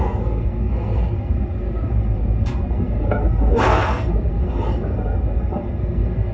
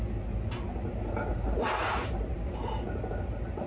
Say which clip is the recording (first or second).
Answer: second